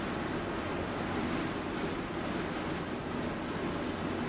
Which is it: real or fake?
real